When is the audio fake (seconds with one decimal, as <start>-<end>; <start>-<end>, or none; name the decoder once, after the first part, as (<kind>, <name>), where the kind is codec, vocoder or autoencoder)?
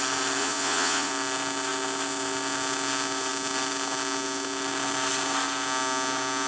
0.4-1.1 (vocoder, Vocos)